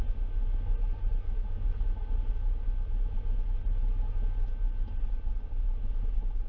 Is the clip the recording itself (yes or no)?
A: yes